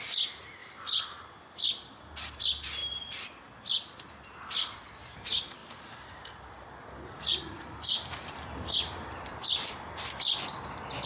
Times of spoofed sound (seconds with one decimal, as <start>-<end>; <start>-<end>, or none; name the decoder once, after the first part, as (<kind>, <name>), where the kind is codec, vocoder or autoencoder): 0.6-2.4 (vocoder, BigVGAN v2); 5.6-10.4

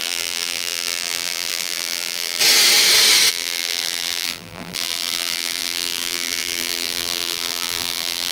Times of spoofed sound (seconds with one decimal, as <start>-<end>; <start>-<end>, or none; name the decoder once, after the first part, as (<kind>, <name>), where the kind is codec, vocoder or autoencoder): 0.0-2.4 (vocoder, BigVGAN v2); 3.3-8.3

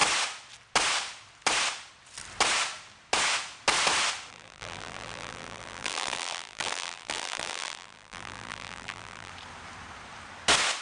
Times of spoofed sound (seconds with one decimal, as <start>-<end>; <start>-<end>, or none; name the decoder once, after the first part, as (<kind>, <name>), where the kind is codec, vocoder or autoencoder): 4.3-9.3 (vocoder, BigVGAN v2)

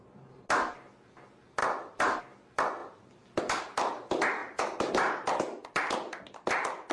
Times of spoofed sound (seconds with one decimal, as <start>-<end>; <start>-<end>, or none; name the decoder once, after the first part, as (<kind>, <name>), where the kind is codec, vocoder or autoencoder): 1.6-2.2 (vocoder, BigVGAN v2); 4.4-5.9